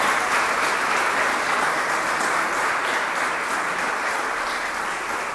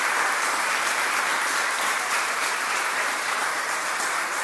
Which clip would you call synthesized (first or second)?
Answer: second